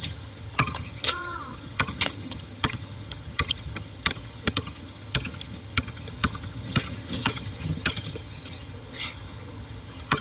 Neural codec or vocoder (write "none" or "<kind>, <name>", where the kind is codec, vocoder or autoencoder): vocoder, HiFi-GAN